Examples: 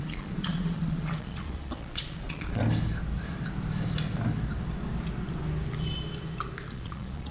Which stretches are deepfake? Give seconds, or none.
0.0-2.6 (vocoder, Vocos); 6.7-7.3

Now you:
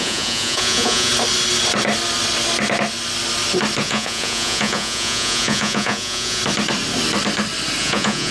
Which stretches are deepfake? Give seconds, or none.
0.0-1.1 (vocoder, Vocos); 3.8-6.4; 7.8-8.3

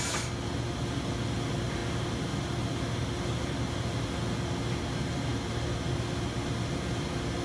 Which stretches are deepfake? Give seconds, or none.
none

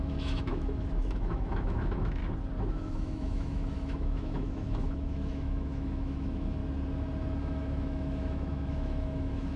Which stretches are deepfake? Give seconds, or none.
0.0-2.2 (autoencoder, DAC-VAE); 2.7-6.6; 7.4-9.6

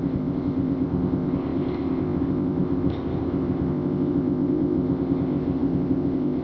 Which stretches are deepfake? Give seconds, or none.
0.0-6.4 (codec, ZipCodec)

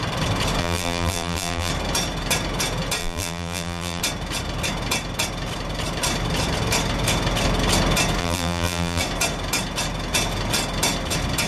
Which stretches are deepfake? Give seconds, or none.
0.6-1.7 (vocoder, BigVGAN v2); 3.0-4.0; 8.2-9.0

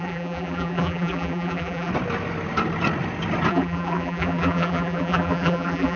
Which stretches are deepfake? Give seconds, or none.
0.0-1.9 (vocoder, BigVGAN v2); 3.5-6.0

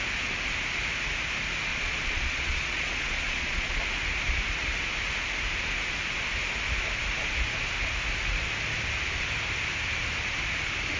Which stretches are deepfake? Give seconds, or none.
1.7-3.8 (vocoder, Vocos)